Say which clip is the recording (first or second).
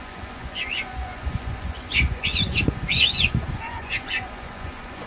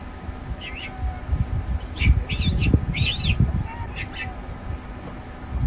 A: second